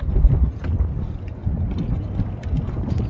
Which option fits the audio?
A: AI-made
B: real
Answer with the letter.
B